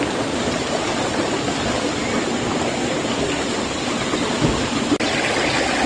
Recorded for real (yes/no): yes